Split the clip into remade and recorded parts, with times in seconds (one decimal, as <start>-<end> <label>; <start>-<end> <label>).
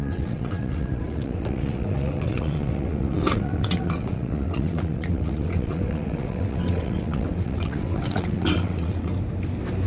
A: 0.0-9.1 remade; 9.1-9.9 recorded